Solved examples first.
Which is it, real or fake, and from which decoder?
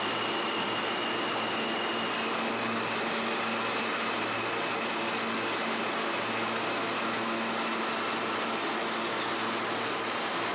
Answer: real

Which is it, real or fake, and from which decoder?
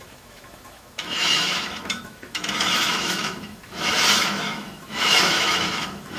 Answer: fake, autoencoder, DAC-VAE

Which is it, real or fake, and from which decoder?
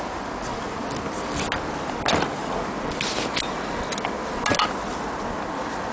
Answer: real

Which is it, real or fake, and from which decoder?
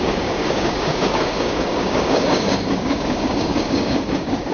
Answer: fake, codec, DAC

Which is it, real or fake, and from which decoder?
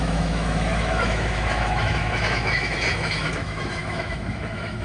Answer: fake, autoencoder, DAC-VAE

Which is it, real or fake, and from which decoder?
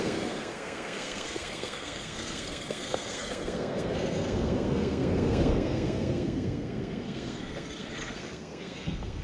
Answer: fake, codec, SNAC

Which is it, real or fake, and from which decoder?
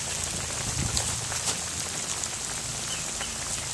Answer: real